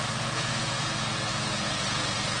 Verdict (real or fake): fake